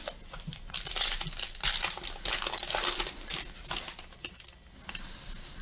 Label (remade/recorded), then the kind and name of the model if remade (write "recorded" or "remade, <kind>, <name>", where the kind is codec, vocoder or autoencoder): recorded